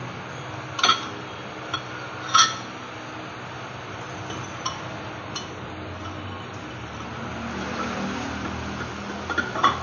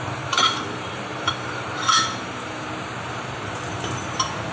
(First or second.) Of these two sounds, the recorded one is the first